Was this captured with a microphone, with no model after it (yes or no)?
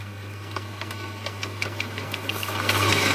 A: no